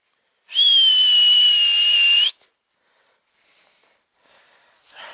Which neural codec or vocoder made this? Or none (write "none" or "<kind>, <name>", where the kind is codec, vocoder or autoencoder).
vocoder, BigVGAN v2